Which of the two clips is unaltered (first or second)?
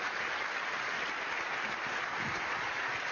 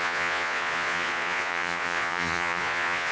first